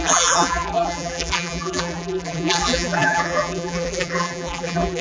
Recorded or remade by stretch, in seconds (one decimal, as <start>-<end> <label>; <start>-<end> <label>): 0.0-5.0 remade